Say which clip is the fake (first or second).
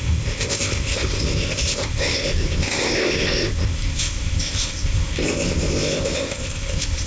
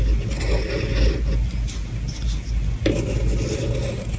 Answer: first